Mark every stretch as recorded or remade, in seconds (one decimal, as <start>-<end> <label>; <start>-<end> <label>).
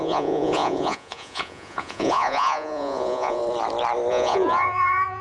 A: 0.0-3.4 remade; 3.4-4.1 recorded; 4.1-5.2 remade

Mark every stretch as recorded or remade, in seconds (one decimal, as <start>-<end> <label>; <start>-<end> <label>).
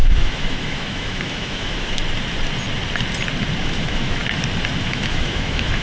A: 0.0-2.0 remade; 2.0-3.6 recorded; 3.6-4.2 remade; 4.2-4.8 recorded; 4.8-5.8 remade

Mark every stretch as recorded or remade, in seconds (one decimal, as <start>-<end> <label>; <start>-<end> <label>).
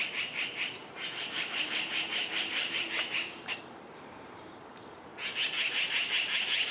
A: 0.0-5.1 remade; 5.1-6.7 recorded